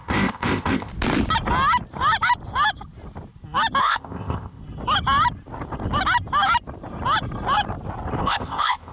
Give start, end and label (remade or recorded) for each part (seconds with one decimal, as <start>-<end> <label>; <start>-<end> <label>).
0.0-0.9 remade; 0.9-3.8 recorded; 3.8-4.6 remade; 4.6-8.2 recorded; 8.2-8.9 remade